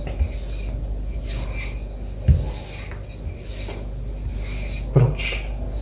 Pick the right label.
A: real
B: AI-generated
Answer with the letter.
A